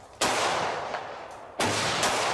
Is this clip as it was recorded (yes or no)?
yes